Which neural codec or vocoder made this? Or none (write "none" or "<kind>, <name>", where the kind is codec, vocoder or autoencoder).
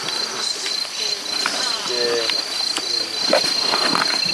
none